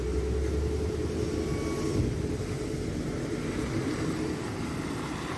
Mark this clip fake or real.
real